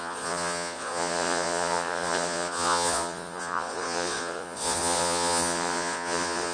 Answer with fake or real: fake